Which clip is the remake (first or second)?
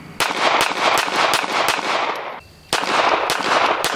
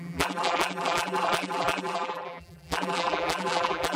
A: second